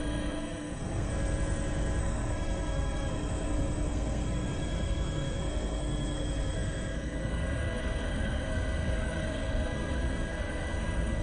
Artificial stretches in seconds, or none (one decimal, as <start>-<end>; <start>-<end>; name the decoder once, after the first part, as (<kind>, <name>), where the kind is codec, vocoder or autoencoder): 0.0-1.1 (codec, SNAC); 2.0-11.2